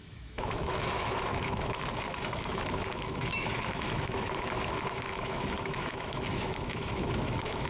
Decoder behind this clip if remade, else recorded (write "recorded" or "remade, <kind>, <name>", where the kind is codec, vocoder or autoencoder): remade, autoencoder, DAC-VAE